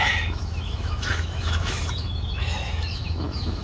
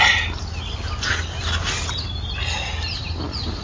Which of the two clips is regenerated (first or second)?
first